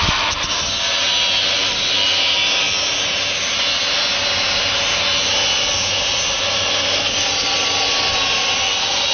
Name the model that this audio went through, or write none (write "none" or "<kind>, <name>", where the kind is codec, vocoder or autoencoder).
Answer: none